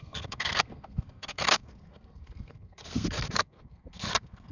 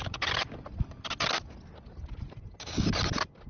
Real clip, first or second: second